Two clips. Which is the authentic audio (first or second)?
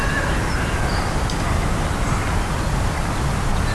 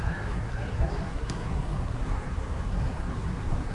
first